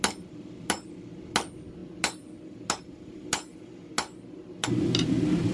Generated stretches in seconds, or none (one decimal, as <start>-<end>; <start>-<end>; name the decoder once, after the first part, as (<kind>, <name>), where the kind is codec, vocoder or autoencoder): none